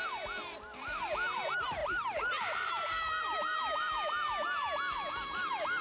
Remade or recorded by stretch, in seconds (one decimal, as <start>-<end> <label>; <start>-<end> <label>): 0.0-5.8 remade